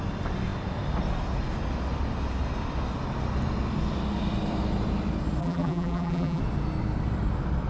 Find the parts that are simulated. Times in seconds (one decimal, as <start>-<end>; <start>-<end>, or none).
5.4-6.4